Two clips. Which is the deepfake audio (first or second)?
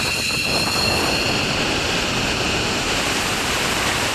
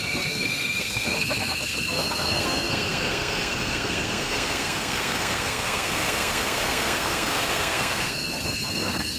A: second